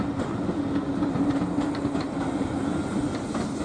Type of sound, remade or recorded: recorded